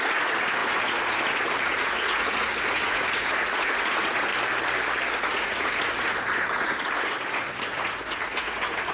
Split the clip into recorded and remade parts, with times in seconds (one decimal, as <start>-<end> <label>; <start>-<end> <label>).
0.0-4.3 remade; 4.3-5.2 recorded; 5.2-8.9 remade